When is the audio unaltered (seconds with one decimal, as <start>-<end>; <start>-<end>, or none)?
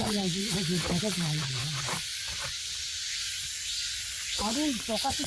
0.4-1.0; 1.6-4.8